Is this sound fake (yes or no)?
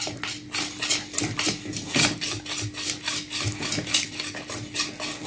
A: no